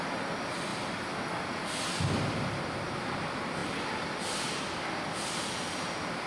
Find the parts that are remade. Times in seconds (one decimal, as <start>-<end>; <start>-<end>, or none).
none